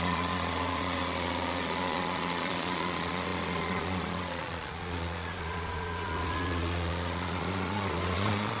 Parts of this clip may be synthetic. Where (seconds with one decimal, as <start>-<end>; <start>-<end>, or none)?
0.0-8.6